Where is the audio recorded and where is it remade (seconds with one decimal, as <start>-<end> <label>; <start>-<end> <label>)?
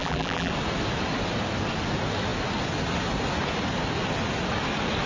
0.0-0.5 remade; 0.5-5.1 recorded